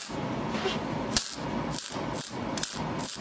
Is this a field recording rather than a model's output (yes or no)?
yes